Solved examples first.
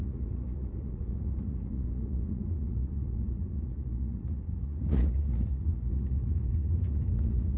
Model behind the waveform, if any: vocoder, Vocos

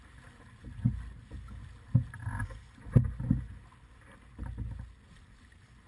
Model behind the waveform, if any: none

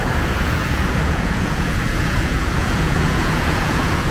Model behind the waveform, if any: vocoder, Vocos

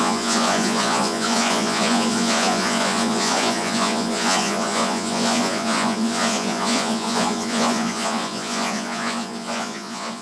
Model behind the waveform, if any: vocoder, Vocos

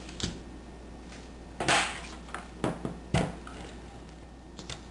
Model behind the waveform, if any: none